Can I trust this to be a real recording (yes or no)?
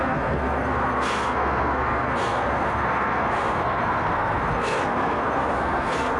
no